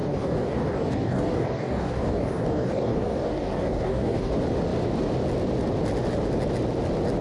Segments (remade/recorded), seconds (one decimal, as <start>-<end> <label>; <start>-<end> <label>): 0.0-4.3 remade; 4.3-7.2 recorded